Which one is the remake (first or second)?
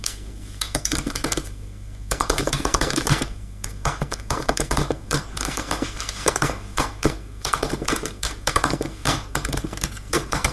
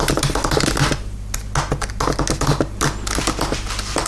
first